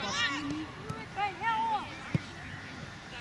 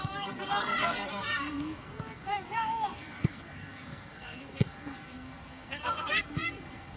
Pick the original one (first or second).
first